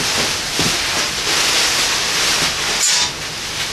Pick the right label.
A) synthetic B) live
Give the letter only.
B